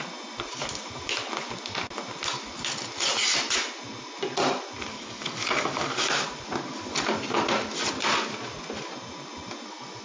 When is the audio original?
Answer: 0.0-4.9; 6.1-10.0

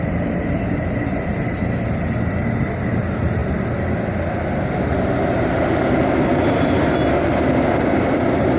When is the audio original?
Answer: 0.0-8.6